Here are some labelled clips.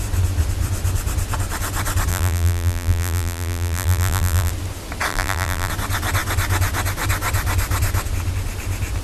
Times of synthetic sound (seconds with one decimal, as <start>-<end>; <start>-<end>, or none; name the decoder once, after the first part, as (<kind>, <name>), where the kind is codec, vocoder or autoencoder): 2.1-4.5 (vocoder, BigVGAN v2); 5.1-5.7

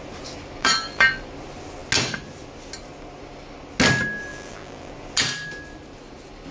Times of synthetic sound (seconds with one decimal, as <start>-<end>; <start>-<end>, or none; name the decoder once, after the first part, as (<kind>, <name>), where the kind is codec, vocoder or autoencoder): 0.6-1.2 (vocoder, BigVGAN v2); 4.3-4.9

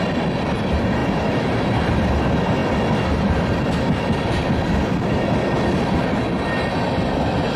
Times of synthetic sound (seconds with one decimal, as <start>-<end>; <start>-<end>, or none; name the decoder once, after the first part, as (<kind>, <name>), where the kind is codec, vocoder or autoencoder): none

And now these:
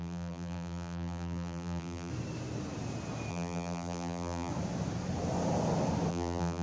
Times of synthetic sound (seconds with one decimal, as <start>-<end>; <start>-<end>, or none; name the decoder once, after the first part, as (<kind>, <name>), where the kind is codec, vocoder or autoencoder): 0.0-2.1 (vocoder, BigVGAN v2); 3.3-4.5; 6.1-6.6